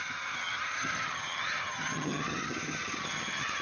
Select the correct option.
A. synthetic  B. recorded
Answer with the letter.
A